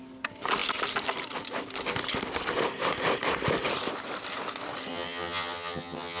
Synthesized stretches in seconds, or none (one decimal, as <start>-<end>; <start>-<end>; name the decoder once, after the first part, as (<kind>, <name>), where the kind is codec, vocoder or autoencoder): 4.9-6.2 (vocoder, HiFi-GAN)